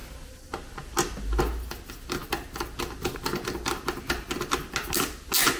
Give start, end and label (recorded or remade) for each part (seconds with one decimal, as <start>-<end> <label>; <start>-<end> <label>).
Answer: 0.0-5.6 recorded